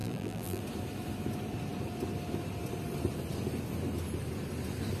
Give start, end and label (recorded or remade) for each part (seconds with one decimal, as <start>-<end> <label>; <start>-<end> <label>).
0.0-0.6 remade; 0.6-5.0 recorded